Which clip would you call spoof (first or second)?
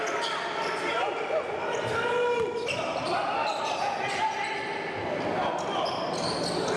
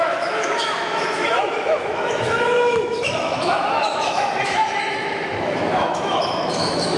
second